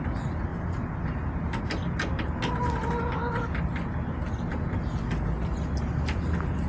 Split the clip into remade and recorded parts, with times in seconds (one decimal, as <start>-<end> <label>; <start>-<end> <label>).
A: 0.0-6.7 recorded